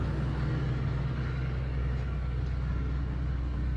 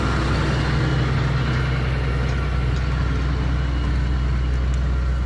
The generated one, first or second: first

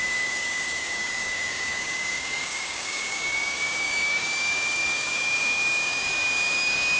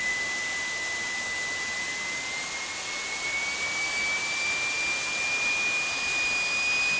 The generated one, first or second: first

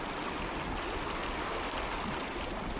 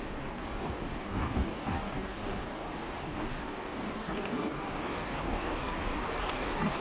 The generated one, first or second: second